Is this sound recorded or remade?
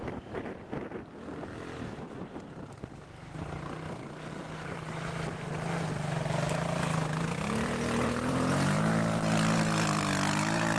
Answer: recorded